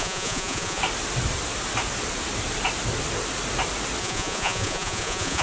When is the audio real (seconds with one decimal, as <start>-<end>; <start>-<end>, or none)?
0.8-4.0